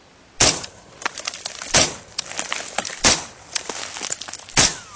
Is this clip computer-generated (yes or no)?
no